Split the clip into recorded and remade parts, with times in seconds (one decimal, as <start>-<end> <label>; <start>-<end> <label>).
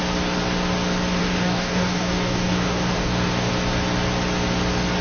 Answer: 0.0-1.2 recorded; 1.2-3.5 remade; 3.5-5.0 recorded